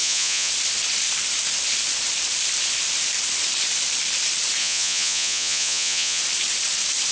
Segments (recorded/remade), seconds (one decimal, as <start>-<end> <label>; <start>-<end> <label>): 0.0-0.5 remade; 0.5-4.6 recorded; 4.6-6.2 remade; 6.2-7.1 recorded